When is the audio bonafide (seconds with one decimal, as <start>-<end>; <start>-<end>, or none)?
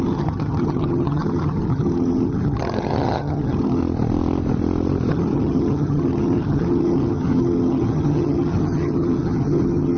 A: 3.8-5.1